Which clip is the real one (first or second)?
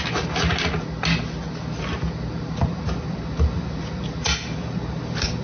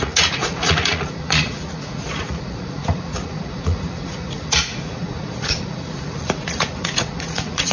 first